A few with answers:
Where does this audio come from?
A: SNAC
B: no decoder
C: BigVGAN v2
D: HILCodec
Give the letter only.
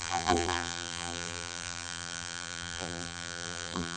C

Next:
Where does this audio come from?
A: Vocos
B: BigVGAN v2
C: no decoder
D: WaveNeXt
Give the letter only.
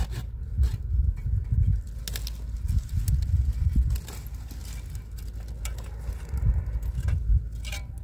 C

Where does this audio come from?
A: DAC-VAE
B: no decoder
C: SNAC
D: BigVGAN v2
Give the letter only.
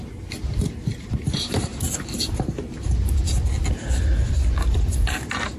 B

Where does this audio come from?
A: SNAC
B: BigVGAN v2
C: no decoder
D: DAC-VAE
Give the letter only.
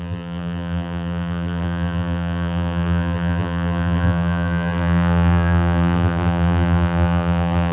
B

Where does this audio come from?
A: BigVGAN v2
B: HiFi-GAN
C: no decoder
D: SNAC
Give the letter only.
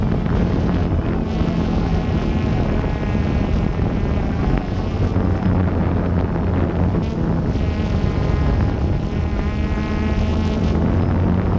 C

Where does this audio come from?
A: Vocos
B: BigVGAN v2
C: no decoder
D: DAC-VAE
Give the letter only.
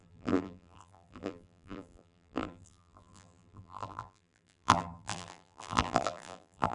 B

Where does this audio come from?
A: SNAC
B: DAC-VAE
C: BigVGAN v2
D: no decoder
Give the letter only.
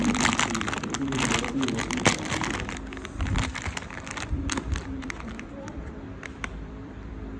C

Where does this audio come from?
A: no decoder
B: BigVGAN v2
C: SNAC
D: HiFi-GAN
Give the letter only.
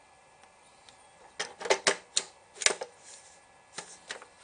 A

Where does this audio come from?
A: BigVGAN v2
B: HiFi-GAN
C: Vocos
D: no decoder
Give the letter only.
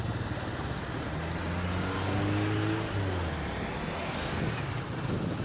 D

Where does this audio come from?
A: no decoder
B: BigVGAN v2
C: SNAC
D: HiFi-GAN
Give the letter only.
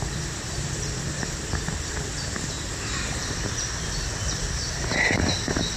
A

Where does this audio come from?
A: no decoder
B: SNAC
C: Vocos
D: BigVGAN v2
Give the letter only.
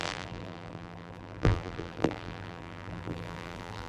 D